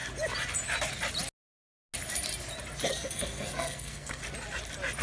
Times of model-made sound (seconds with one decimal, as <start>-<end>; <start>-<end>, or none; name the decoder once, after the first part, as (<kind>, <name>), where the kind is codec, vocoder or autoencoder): 2.9-4.2 (codec, SNAC)